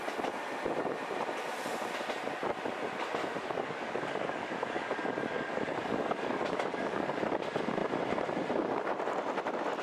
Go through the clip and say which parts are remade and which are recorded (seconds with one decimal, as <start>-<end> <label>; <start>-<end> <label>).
0.0-3.2 recorded; 3.2-7.3 remade; 7.3-9.8 recorded